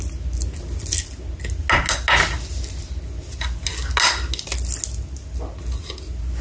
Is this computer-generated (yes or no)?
no